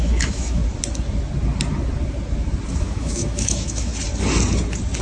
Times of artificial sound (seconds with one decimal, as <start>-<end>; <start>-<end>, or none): 0.0-0.6; 2.7-3.9